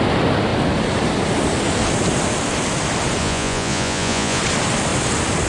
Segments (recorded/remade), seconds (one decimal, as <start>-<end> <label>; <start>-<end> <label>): 0.0-3.2 recorded; 3.2-4.4 remade; 4.4-5.5 recorded